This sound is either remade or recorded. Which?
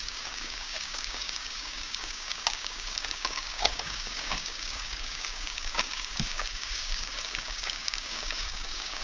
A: remade